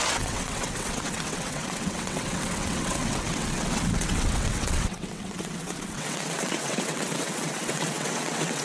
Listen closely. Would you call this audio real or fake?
fake